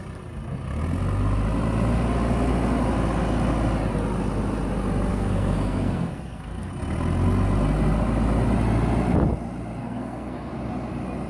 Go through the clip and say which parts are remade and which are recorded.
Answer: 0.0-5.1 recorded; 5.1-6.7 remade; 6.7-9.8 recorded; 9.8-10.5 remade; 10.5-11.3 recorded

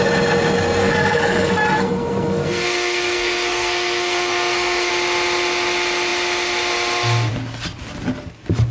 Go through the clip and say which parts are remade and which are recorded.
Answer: 0.0-0.8 recorded; 0.8-4.9 remade; 4.9-8.7 recorded

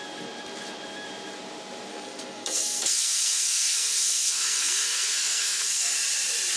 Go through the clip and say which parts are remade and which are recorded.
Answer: 0.0-1.9 recorded; 1.9-5.9 remade; 5.9-6.6 recorded

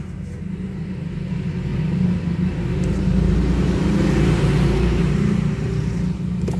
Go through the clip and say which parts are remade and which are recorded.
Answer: 0.0-1.7 recorded; 1.7-5.0 remade; 5.0-6.6 recorded